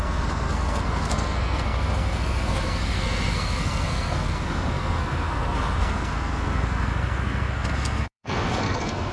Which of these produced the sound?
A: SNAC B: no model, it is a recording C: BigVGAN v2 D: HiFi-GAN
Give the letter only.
A